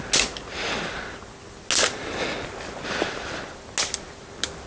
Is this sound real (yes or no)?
yes